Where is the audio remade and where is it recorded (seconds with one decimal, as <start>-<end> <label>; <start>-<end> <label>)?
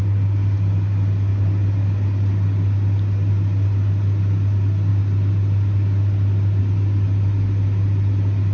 0.0-8.5 recorded